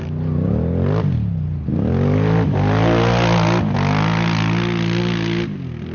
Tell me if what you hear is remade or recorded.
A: recorded